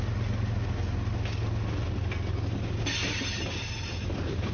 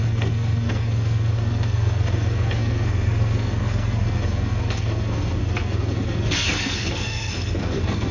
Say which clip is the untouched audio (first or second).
first